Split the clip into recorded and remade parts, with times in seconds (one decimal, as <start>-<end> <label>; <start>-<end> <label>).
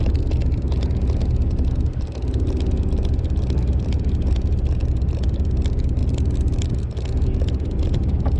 0.0-8.4 recorded